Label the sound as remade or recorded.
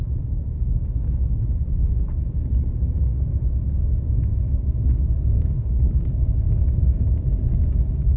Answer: remade